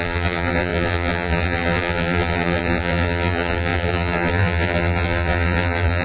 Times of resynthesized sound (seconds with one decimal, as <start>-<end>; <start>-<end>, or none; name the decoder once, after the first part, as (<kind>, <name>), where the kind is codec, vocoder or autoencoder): 0.0-6.0 (vocoder, BigVGAN v2)